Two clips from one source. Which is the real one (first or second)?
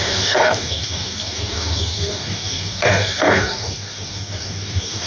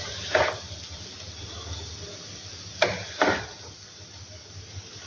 second